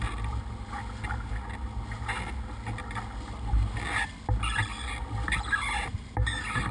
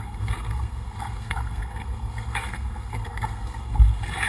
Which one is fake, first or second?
second